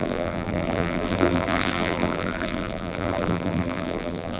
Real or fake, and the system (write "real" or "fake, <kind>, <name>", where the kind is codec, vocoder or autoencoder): fake, vocoder, BigVGAN v2